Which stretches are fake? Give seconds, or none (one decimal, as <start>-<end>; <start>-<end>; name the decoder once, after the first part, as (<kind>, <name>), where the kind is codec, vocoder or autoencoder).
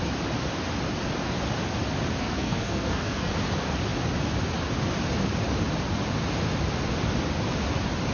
2.2-3.3 (codec, SNAC)